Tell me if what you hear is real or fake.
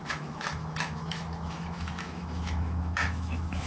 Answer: fake